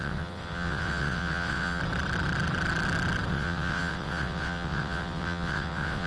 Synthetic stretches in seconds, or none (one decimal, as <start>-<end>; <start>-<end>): 0.0-1.8; 3.3-6.1